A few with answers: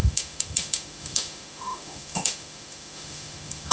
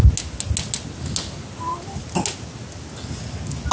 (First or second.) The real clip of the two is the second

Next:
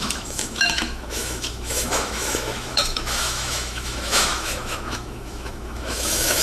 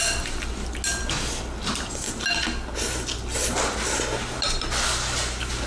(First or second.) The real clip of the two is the second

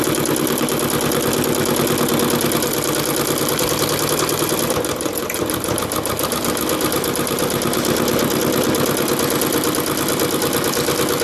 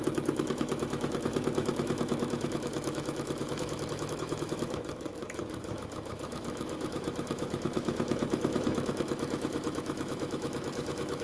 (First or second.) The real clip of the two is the first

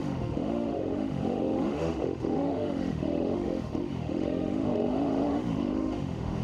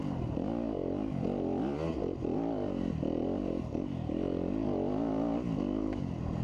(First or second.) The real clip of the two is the second